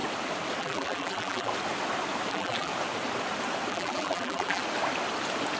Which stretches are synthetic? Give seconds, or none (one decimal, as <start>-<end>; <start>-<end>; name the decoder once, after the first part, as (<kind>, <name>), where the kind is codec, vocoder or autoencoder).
0.6-1.5 (vocoder, BigVGAN v2); 2.3-2.7; 3.7-4.6

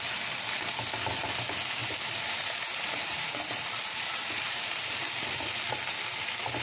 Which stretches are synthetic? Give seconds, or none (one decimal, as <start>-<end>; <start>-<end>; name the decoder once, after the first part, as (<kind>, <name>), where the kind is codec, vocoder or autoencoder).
1.8-5.7 (vocoder, BigVGAN v2)

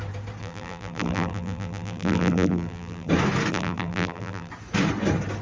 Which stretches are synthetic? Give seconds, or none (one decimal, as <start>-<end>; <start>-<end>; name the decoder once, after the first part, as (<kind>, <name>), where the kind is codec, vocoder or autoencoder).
0.4-3.1 (vocoder, BigVGAN v2); 3.5-4.5

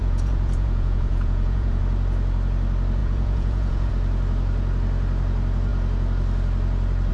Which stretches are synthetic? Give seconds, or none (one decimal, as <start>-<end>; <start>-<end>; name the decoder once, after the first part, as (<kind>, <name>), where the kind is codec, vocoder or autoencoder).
0.0-1.8 (vocoder, Vocos); 3.0-3.9

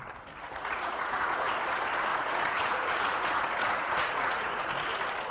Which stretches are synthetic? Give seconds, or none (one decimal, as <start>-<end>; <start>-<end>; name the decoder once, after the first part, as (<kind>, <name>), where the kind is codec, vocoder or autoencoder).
0.4-1.5 (vocoder, Vocos); 2.1-4.6